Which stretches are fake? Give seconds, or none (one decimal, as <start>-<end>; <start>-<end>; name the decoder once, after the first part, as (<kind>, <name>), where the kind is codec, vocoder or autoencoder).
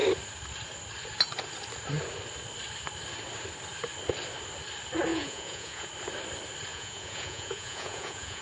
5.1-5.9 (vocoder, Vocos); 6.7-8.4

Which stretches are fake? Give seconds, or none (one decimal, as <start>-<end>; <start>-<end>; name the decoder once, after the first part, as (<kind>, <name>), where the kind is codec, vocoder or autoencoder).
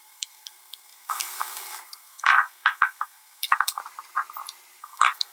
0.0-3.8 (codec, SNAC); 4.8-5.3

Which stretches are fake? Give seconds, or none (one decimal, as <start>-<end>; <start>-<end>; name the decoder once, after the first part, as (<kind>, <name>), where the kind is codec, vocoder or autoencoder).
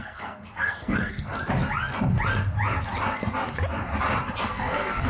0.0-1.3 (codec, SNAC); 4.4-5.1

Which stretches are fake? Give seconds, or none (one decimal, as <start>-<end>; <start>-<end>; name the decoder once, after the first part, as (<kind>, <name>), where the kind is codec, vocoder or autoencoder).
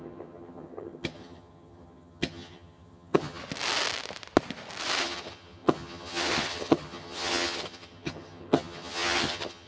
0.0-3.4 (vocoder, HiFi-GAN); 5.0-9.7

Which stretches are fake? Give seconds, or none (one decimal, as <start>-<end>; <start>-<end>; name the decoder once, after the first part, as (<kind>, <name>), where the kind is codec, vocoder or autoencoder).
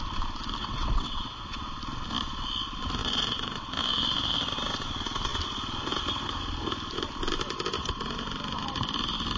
0.6-1.7 (vocoder, WaveNeXt); 3.0-3.7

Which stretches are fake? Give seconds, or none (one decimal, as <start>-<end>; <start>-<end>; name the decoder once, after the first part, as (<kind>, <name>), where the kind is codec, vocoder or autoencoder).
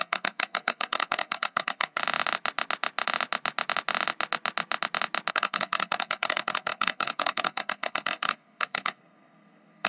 0.0-2.0 (codec, SNAC); 5.3-9.9